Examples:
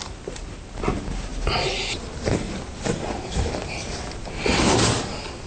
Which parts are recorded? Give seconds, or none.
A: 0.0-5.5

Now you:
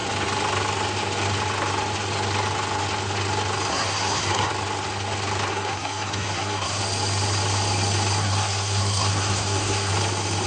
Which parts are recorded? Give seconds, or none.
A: 0.0-3.7; 4.5-5.5; 6.8-8.2; 9.9-10.5

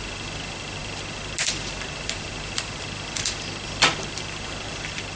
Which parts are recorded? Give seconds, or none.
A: 0.0-5.2

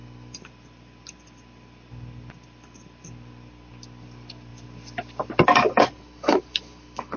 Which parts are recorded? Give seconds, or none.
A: 0.0-7.2

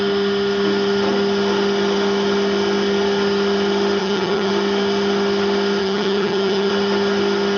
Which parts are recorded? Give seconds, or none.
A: 0.0-4.0; 4.5-5.8; 6.7-7.6